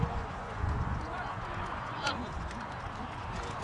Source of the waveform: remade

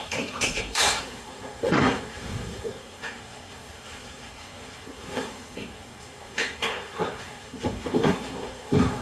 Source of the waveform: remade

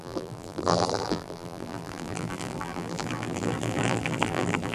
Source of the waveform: remade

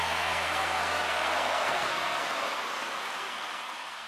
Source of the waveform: remade